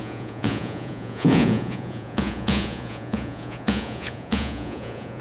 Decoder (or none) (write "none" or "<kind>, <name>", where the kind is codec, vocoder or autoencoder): vocoder, Vocos